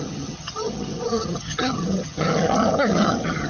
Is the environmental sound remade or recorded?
remade